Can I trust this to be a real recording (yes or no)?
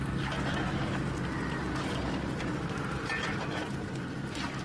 yes